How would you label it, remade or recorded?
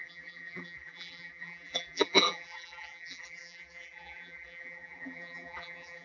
remade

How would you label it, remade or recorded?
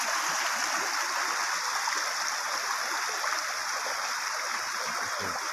recorded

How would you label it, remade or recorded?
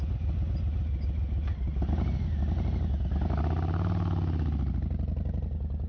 recorded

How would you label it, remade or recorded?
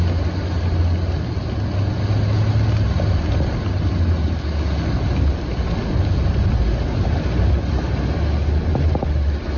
recorded